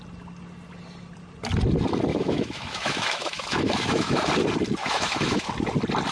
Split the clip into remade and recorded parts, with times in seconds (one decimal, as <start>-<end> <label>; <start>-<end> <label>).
0.0-2.1 recorded; 2.1-4.3 remade; 4.3-4.8 recorded; 4.8-5.5 remade; 5.5-6.1 recorded

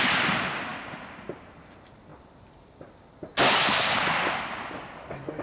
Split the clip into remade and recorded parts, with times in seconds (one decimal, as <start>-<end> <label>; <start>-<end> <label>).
0.0-5.4 recorded

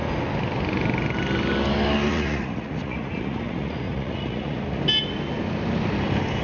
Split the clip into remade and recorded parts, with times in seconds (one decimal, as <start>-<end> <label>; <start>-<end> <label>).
0.0-2.1 recorded; 2.1-4.8 remade; 4.8-6.4 recorded

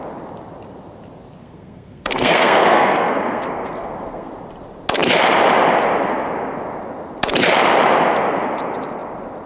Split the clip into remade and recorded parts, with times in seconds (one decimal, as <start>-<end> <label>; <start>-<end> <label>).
0.0-1.4 recorded; 1.4-4.3 remade; 4.3-9.5 recorded

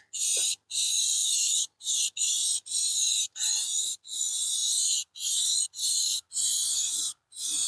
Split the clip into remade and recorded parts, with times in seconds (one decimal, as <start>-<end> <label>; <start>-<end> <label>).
0.0-7.7 recorded

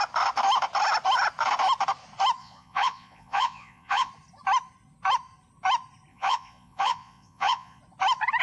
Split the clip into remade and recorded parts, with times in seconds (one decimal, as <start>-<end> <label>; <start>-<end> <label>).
0.0-2.4 recorded; 2.4-4.1 remade; 4.1-6.1 recorded; 6.1-7.8 remade; 7.8-8.4 recorded